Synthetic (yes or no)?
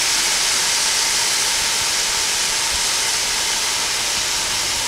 no